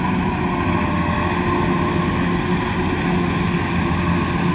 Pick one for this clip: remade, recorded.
recorded